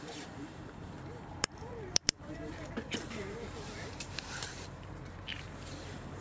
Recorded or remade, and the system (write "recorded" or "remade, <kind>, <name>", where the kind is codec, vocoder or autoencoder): remade, vocoder, BigVGAN v2